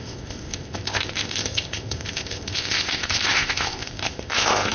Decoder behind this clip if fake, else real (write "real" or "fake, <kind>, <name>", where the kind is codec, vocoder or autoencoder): fake, codec, ZipCodec